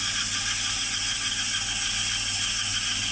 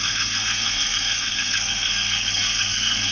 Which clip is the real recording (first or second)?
first